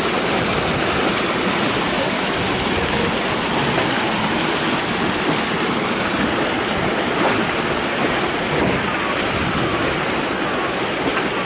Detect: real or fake real